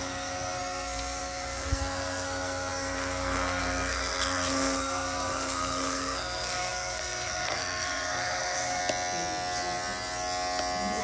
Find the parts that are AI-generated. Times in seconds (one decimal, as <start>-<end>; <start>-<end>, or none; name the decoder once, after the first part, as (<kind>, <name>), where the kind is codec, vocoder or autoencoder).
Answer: 0.0-8.8 (codec, SNAC)